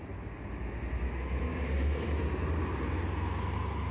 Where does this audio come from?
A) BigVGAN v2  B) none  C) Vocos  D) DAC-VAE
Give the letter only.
B